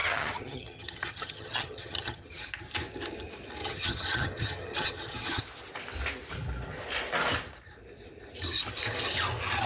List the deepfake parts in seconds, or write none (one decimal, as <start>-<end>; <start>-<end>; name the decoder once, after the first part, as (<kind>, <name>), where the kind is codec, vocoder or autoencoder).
0.0-2.4 (vocoder, HiFi-GAN); 3.6-5.4